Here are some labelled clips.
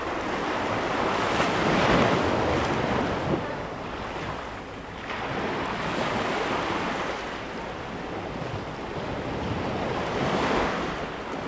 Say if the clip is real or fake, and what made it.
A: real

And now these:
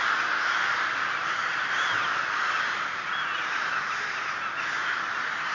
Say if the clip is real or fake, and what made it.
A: real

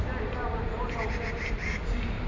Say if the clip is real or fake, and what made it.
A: real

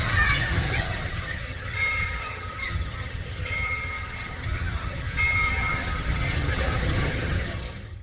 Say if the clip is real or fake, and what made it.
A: fake, vocoder, HiFi-GAN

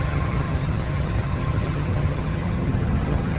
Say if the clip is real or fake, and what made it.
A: fake, vocoder, HiFi-GAN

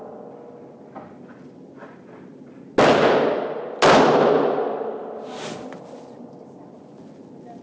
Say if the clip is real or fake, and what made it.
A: real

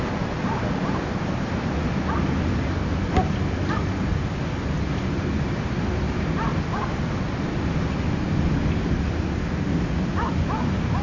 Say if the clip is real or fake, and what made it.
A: real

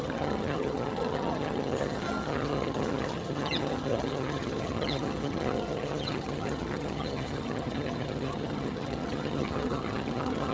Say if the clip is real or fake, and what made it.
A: fake, vocoder, HiFi-GAN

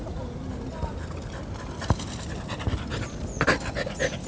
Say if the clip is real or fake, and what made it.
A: real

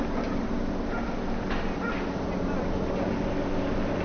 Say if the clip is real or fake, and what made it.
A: real